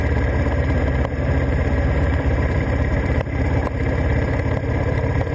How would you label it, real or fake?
fake